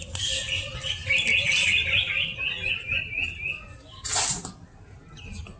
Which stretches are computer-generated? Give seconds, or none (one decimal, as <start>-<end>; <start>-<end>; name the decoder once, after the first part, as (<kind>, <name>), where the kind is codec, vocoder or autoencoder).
none